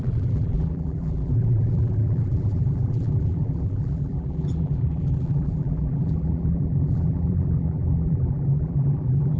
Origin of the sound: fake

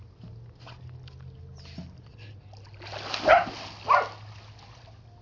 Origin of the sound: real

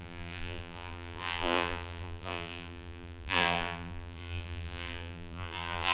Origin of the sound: fake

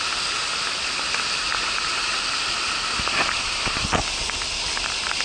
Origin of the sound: real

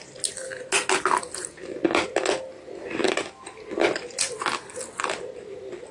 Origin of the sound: real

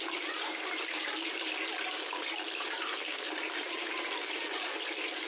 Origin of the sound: fake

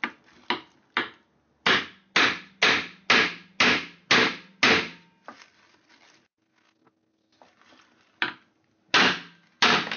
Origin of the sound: real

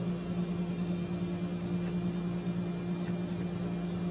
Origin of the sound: real